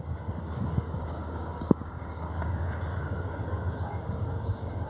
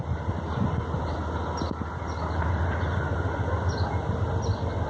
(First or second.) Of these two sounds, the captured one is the second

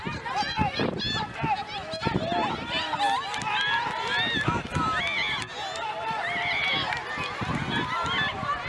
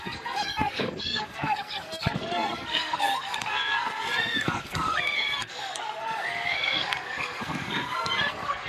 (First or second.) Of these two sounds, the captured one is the first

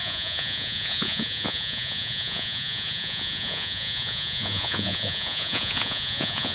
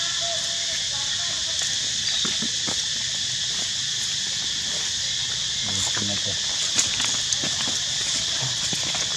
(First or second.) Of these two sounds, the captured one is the second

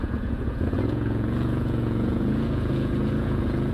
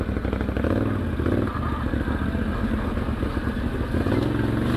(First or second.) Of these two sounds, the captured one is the second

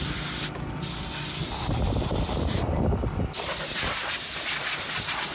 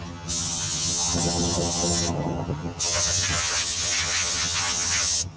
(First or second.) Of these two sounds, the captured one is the first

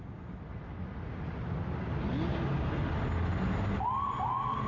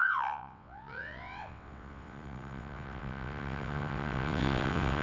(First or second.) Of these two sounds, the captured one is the first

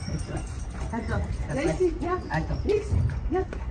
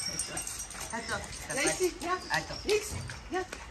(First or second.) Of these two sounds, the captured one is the second